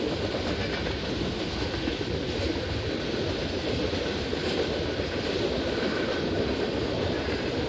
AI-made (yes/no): no